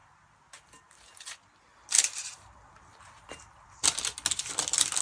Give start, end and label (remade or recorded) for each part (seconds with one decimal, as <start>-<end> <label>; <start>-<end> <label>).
0.0-5.0 recorded